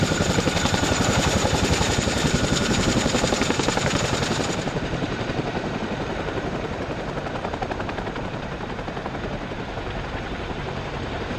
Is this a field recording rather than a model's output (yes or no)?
no